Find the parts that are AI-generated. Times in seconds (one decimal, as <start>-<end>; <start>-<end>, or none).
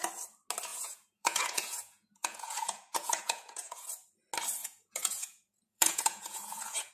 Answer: 0.7-3.9; 4.6-6.9